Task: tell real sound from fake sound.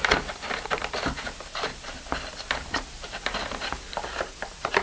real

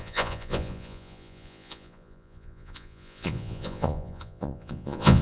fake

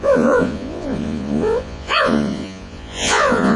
fake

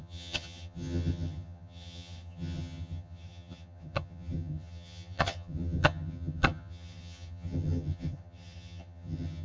fake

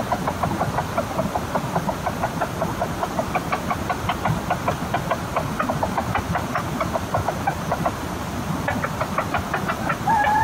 real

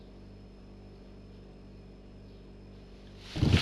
real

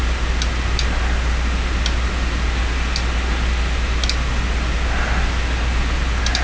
real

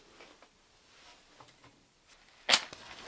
real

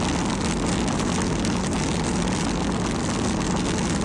real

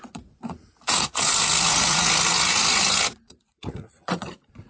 fake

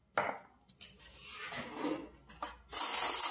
real